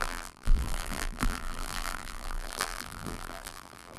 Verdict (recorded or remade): remade